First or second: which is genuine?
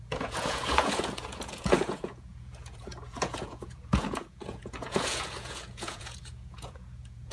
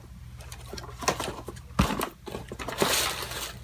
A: second